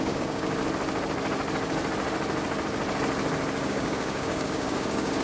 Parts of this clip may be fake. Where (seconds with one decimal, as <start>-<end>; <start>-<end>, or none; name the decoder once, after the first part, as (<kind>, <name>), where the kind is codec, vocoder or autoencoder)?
0.0-0.6 (codec, DAC); 3.6-5.2